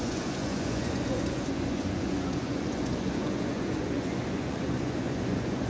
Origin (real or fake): fake